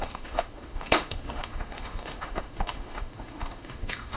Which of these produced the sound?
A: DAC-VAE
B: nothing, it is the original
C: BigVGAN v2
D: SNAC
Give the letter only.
A